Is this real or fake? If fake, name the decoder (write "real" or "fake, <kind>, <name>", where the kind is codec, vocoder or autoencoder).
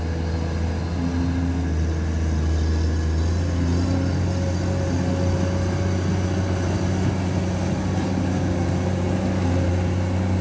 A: real